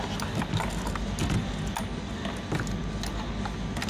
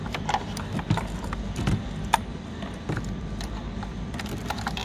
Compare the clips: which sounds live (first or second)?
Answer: first